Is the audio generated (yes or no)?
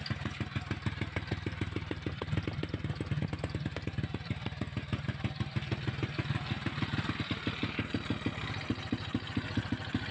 no